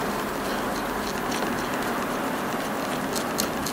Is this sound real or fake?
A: real